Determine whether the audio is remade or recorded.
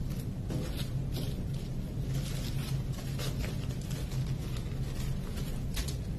recorded